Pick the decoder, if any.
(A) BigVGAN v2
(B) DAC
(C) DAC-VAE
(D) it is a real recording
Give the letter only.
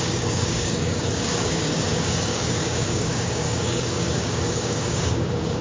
B